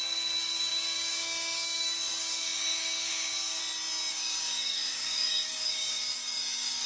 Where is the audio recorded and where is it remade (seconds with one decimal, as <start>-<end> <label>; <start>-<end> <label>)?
0.0-3.6 remade; 3.6-4.1 recorded; 4.1-6.9 remade